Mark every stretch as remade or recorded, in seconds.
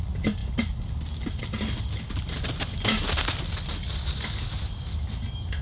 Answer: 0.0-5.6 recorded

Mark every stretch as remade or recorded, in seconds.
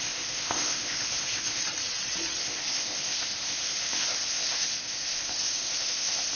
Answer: 0.0-1.6 remade; 1.6-2.4 recorded; 2.4-6.4 remade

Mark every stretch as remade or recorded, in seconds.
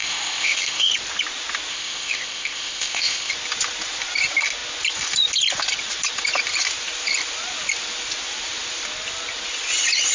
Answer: 0.0-0.9 remade; 0.9-1.7 recorded; 1.7-3.3 remade; 3.3-10.1 recorded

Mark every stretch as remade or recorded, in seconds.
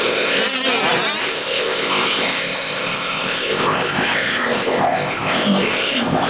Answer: 0.0-0.4 remade; 0.4-1.2 recorded; 1.2-6.3 remade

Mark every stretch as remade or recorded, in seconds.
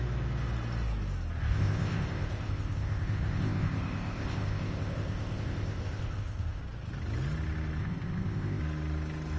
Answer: 0.0-1.4 recorded; 1.4-6.6 remade; 6.6-7.8 recorded; 7.8-8.6 remade; 8.6-9.4 recorded